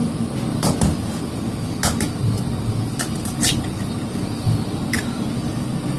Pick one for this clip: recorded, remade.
recorded